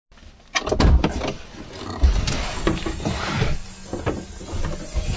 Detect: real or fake real